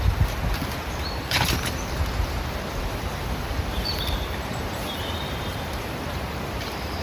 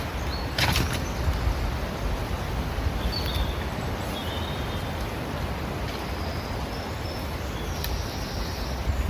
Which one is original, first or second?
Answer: second